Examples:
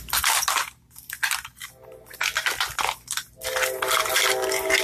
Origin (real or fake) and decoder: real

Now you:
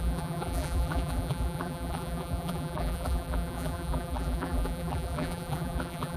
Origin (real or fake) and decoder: fake, vocoder, BigVGAN v2